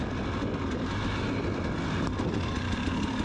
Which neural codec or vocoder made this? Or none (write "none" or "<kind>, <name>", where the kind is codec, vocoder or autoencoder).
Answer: none